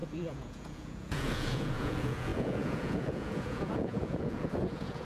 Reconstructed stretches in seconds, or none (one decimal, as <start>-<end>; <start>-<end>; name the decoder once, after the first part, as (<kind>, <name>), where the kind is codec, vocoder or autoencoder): 0.0-5.0 (vocoder, Vocos)